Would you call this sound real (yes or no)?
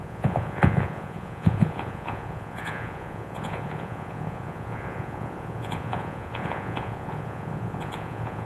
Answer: no